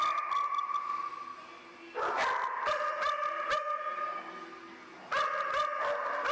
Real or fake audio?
real